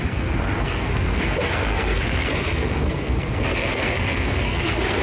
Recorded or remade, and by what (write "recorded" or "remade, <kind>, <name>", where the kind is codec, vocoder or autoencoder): remade, codec, SNAC